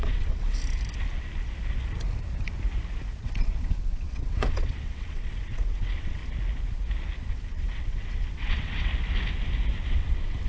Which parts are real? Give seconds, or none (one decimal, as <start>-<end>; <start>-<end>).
0.6-3.2; 6.2-7.3; 8.9-9.9